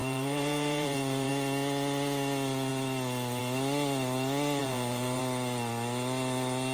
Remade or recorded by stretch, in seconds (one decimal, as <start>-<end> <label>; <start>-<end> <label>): 0.0-1.3 remade; 1.3-4.6 recorded; 4.6-5.2 remade; 5.2-6.7 recorded